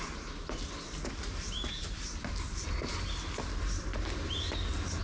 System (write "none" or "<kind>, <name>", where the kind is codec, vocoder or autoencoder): none